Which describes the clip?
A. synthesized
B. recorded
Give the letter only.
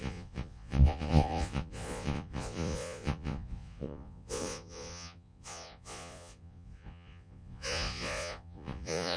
A